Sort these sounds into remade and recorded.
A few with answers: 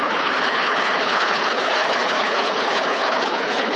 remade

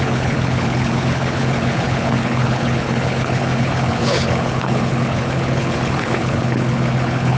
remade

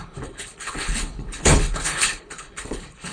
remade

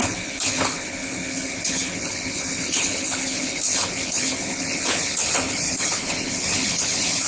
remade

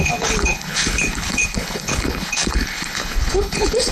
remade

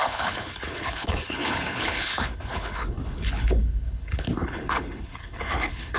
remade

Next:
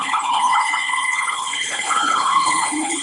remade